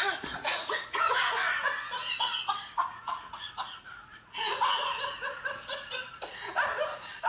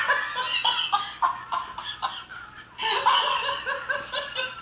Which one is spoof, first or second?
first